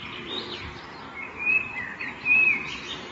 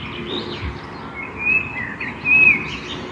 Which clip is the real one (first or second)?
second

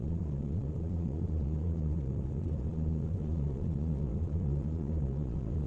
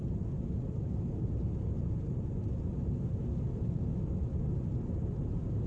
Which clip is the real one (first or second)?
second